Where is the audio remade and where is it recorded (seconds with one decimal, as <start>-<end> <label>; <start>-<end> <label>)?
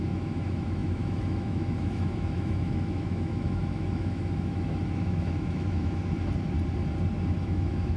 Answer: 0.0-6.0 remade; 6.0-7.4 recorded; 7.4-8.0 remade